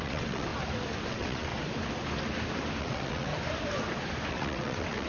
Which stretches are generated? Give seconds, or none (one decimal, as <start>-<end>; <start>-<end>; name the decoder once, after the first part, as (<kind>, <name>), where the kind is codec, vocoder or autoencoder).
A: 0.0-0.5 (vocoder, WaveNeXt); 1.1-1.5; 2.8-3.3; 4.3-5.1